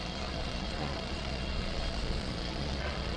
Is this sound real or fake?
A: fake